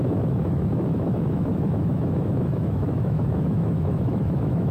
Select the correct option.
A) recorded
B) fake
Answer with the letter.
B